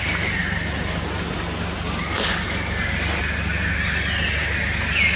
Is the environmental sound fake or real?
real